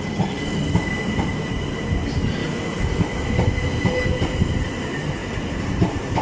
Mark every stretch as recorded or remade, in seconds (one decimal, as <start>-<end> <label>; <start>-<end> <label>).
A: 0.0-6.2 recorded